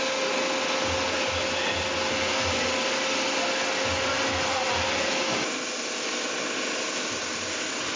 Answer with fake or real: real